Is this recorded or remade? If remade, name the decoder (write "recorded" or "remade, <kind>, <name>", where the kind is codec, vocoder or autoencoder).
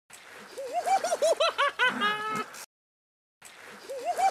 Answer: recorded